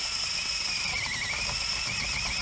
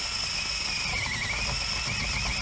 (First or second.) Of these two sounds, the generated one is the first